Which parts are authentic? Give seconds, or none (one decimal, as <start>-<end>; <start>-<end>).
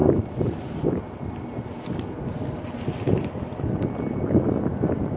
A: 1.0-5.2